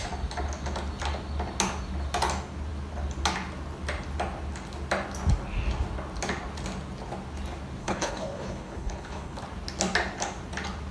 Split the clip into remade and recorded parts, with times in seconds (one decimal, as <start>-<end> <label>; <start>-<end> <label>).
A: 0.0-7.8 recorded; 7.8-9.4 remade; 9.4-10.9 recorded